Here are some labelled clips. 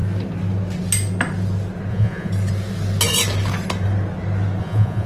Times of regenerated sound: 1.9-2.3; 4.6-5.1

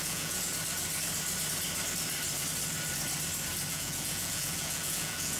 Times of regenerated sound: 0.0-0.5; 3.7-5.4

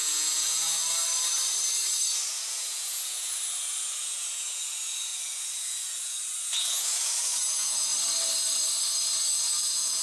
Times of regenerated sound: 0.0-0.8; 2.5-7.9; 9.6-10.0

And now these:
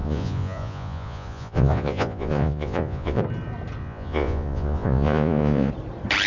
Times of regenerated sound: 0.0-3.2; 3.8-5.7